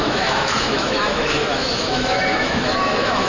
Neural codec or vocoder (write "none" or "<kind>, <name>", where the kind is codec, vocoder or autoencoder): autoencoder, DAC-VAE